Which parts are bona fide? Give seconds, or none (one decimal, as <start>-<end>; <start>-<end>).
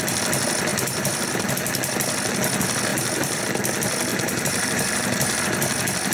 0.0-0.7; 1.5-2.9; 3.4-4.1; 5.4-6.1